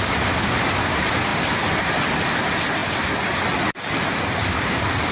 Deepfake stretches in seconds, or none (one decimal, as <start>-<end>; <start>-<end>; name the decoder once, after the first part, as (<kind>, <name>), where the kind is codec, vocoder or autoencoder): none